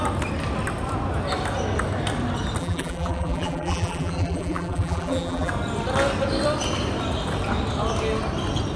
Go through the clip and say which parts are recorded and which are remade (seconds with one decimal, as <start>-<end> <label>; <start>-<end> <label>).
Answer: 0.0-2.6 recorded; 2.6-5.5 remade; 5.5-8.8 recorded